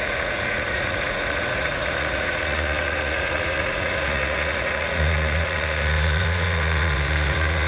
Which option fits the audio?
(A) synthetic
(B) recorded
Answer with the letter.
A